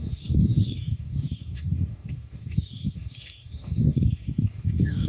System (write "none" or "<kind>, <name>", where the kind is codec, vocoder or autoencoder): codec, DAC